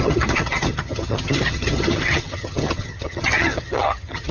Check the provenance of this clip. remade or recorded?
remade